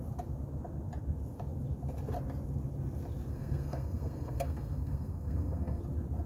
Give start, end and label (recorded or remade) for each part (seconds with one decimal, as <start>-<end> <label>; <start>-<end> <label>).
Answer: 0.0-3.3 recorded; 3.3-5.8 remade; 5.8-6.3 recorded